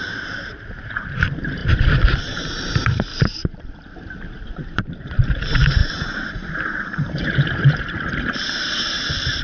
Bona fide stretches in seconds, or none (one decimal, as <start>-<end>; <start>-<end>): none